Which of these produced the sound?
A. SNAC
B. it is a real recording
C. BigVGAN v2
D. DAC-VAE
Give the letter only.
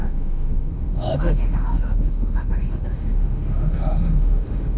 D